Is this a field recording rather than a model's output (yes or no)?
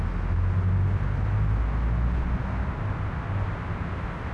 yes